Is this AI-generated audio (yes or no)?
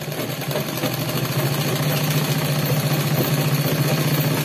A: no